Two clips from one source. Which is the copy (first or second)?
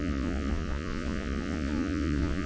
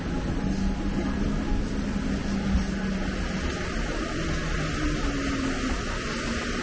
first